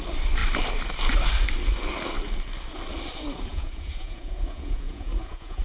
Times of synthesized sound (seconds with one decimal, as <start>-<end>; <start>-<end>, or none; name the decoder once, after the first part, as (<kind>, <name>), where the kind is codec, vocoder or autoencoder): 3.5-5.6 (vocoder, Vocos)